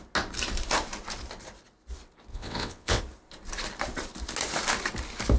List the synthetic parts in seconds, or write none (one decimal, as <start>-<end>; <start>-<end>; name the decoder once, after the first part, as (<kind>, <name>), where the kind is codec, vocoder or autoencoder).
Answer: 2.3-3.0 (vocoder, WaveNeXt)